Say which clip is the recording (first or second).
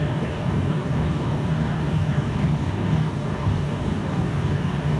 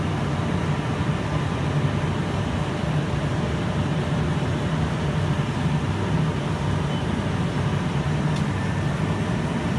second